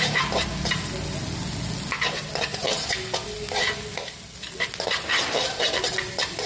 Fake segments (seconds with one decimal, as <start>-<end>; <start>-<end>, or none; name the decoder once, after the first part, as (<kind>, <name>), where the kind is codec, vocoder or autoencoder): none